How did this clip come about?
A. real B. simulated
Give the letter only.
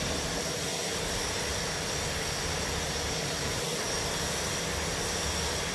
A